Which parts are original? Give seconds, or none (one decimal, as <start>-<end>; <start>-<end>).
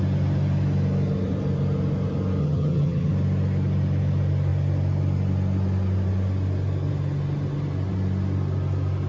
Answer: 0.0-2.4; 3.1-9.1